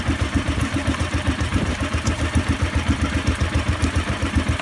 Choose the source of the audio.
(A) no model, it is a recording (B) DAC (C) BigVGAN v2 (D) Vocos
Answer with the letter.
C